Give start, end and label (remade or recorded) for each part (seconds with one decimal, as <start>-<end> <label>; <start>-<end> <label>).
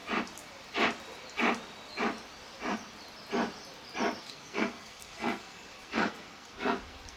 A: 0.0-4.2 recorded; 4.2-7.2 remade